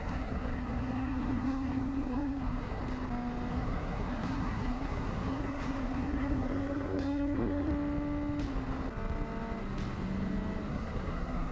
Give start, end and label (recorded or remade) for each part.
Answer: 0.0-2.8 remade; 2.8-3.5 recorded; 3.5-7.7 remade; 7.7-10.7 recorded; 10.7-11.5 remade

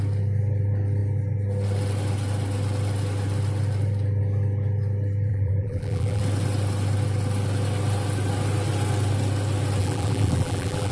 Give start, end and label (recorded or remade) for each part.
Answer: 0.0-5.3 recorded; 5.3-6.2 remade; 6.2-9.8 recorded; 9.8-10.9 remade

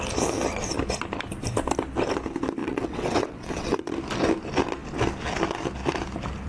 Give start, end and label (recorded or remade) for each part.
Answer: 0.0-2.6 recorded; 2.6-3.9 remade; 3.9-6.5 recorded

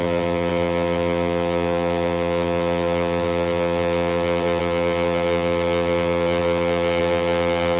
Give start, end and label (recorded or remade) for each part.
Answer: 0.0-7.8 remade

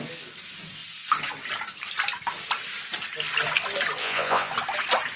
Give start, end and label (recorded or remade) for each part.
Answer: 0.0-4.0 recorded; 4.0-4.5 remade; 4.5-5.2 recorded

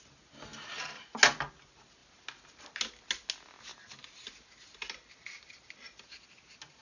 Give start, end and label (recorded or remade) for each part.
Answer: 0.0-6.8 recorded

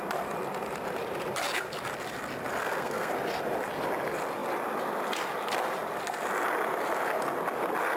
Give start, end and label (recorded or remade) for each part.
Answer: 0.0-2.6 recorded; 2.6-3.1 remade; 3.1-8.0 recorded